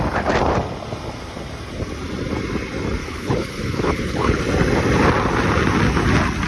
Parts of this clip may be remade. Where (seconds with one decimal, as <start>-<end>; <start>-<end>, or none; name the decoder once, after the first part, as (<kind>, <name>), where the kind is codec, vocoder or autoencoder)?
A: 3.0-4.4 (codec, HILCodec)